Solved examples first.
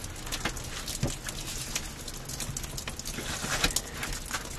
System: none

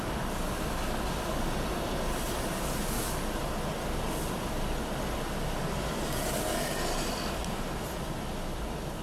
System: none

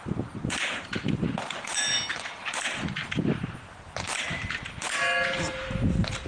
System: vocoder, BigVGAN v2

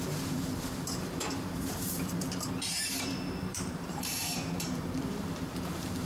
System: vocoder, BigVGAN v2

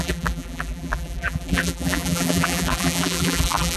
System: vocoder, BigVGAN v2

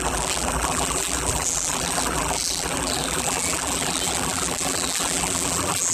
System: vocoder, BigVGAN v2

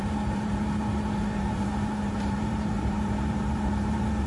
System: vocoder, BigVGAN v2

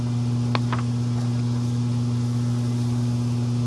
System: none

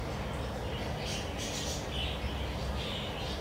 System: none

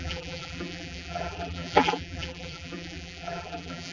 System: vocoder, BigVGAN v2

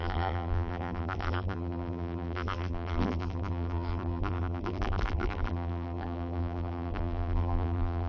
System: vocoder, BigVGAN v2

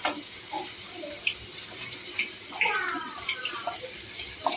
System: vocoder, BigVGAN v2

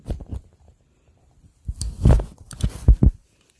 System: vocoder, BigVGAN v2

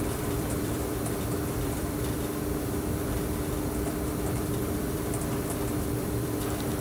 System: vocoder, BigVGAN v2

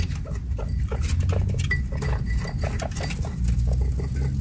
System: none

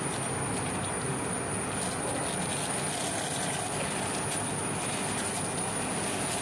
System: none